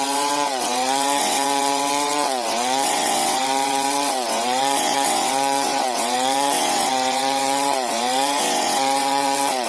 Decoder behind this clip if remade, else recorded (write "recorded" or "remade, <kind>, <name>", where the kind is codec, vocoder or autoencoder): remade, vocoder, WaveNeXt